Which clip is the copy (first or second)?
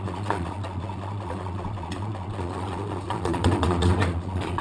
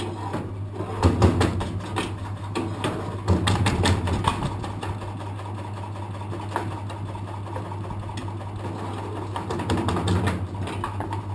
first